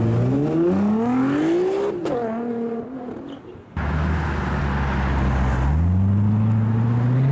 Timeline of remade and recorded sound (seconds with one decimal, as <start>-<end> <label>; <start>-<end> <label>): 0.0-7.3 recorded